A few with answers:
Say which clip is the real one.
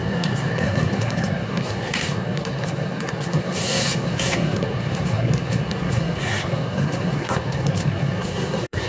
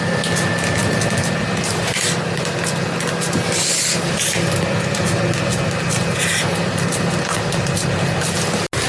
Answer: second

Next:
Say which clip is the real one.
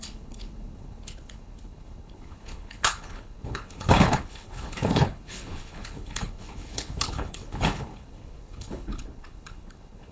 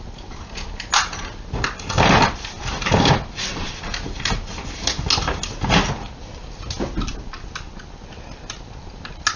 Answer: second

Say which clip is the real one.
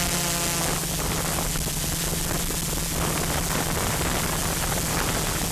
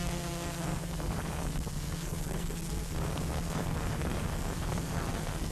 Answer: first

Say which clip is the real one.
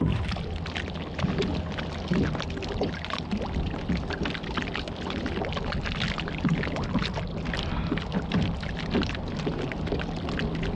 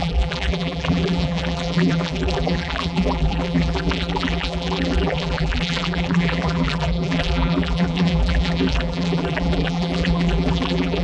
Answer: first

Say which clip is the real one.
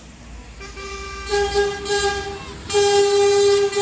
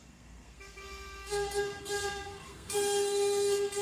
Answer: first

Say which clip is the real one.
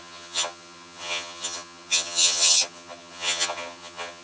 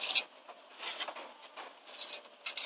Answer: second